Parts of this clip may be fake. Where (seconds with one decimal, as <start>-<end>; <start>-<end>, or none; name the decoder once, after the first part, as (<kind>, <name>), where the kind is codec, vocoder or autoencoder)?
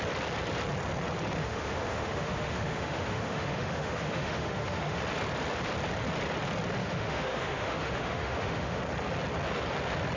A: 1.4-5.0 (autoencoder, DAC-VAE); 6.8-8.8